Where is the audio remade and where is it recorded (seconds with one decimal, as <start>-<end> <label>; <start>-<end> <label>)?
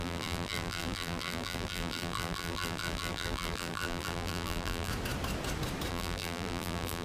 0.0-4.9 remade; 4.9-5.9 recorded; 5.9-7.0 remade